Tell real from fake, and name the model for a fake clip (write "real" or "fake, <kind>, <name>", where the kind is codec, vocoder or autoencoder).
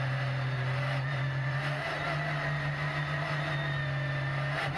real